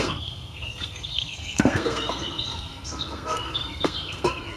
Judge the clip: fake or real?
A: fake